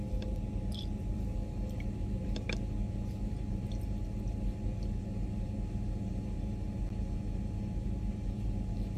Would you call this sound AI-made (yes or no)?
no